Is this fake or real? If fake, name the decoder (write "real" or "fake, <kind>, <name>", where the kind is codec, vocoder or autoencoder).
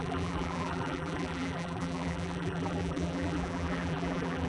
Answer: fake, vocoder, BigVGAN v2